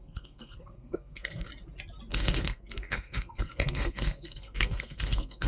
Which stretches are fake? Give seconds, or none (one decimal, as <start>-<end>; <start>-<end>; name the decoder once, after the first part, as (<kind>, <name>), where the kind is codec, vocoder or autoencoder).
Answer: 0.0-1.5 (codec, SNAC); 2.1-5.5